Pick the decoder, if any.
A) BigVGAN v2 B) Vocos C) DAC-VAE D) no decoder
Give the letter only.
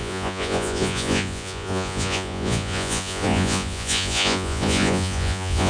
B